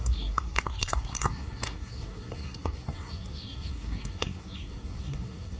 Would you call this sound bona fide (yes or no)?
no